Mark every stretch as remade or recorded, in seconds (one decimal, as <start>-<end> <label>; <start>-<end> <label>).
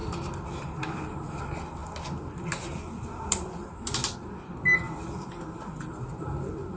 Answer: 0.0-6.8 recorded